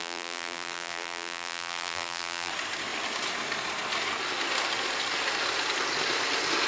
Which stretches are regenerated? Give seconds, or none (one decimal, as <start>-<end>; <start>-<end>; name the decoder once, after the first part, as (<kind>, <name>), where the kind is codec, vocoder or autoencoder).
0.0-2.5 (vocoder, BigVGAN v2)